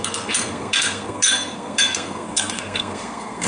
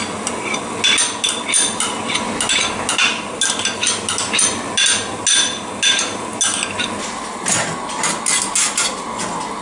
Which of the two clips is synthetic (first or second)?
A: first